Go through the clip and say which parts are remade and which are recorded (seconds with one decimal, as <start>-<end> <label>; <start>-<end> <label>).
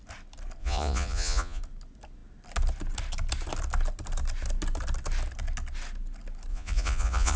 0.0-0.6 recorded; 0.6-1.6 remade; 1.6-6.5 recorded; 6.5-7.4 remade